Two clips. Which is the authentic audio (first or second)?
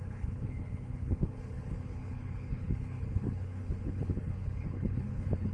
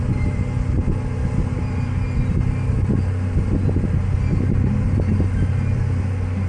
second